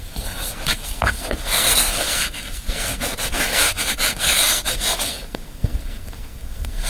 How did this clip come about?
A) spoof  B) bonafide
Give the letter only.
A